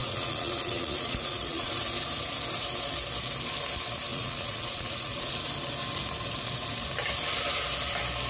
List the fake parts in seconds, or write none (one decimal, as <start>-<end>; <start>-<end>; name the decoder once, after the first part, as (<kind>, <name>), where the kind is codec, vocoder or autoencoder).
0.0-1.7 (vocoder, Vocos); 4.1-5.3